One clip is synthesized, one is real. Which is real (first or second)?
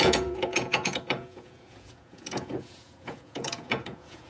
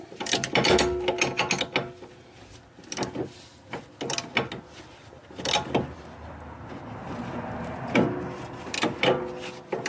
second